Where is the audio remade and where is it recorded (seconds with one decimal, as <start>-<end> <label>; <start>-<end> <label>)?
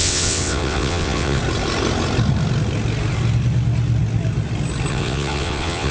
0.0-1.4 remade; 1.4-4.9 recorded; 4.9-5.9 remade